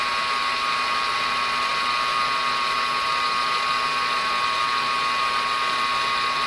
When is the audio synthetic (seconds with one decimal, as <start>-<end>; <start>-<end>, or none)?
none